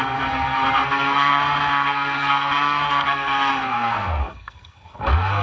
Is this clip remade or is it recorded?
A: remade